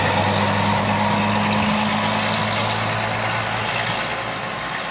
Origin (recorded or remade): recorded